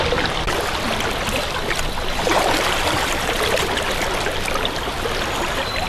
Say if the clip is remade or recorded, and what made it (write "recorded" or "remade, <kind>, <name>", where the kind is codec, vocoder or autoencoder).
recorded